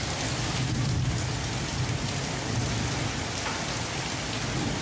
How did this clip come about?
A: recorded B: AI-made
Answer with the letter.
A